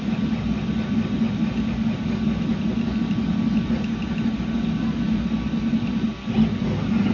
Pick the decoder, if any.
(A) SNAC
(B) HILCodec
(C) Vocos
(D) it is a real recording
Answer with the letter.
D